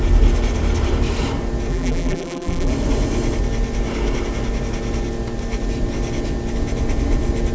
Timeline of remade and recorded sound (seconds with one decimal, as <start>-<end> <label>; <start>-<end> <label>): 0.0-1.7 recorded; 1.7-2.7 remade; 2.7-7.5 recorded